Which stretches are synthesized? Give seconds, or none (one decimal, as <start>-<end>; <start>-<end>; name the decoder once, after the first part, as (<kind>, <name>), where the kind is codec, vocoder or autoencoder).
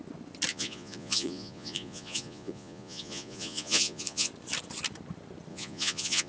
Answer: 0.5-4.3 (vocoder, Vocos); 5.5-6.3